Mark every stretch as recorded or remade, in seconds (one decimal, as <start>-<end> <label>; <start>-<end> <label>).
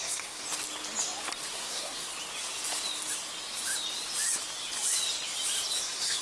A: 0.0-0.4 remade; 0.4-1.5 recorded; 1.5-2.1 remade; 2.1-5.8 recorded; 5.8-6.2 remade